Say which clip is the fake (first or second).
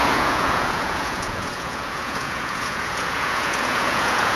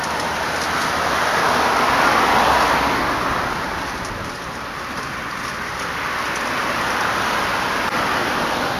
first